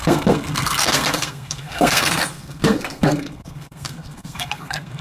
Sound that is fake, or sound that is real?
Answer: fake